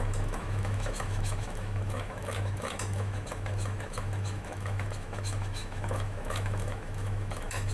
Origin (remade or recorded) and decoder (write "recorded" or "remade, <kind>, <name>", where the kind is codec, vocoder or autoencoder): remade, autoencoder, DAC-VAE